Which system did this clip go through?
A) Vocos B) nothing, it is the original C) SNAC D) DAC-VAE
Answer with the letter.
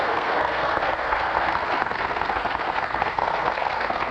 C